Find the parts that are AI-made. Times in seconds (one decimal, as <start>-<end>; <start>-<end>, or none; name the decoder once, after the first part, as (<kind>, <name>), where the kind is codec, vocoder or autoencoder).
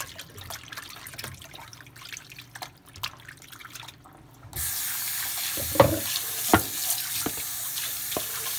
none